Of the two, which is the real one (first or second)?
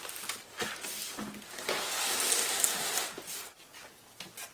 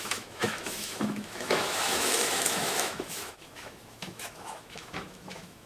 first